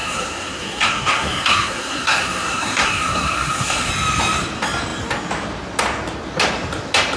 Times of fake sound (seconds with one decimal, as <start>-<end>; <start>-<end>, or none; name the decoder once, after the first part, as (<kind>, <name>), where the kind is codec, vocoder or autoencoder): 0.0-3.9 (codec, SNAC)